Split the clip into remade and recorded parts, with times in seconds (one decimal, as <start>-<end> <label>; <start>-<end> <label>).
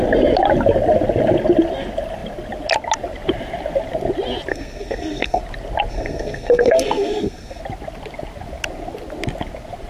0.0-4.5 recorded; 4.5-5.4 remade; 5.4-5.9 recorded; 5.9-7.6 remade; 7.6-9.9 recorded